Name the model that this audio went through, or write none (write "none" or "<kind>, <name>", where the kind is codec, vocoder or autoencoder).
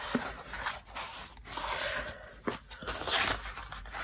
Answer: none